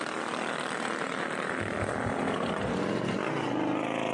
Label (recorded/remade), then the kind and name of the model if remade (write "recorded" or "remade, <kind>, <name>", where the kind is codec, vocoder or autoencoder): recorded